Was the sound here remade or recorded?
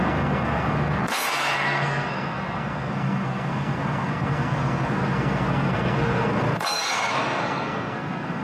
remade